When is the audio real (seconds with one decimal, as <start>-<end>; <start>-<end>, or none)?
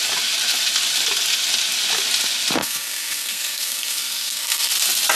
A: 0.0-2.6; 4.7-5.2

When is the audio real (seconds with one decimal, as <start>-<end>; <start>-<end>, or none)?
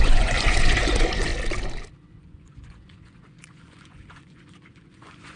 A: 1.3-2.0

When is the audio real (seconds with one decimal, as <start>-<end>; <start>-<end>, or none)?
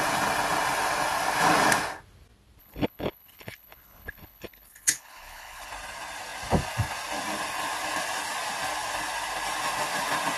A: 0.0-2.6; 5.7-10.4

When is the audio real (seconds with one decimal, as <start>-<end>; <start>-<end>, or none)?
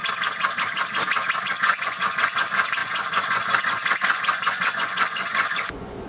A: 0.0-1.4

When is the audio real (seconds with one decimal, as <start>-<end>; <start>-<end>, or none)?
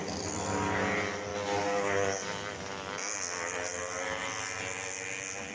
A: 0.0-5.5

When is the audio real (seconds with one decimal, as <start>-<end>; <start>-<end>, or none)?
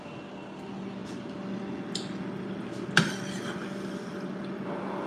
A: 0.0-5.1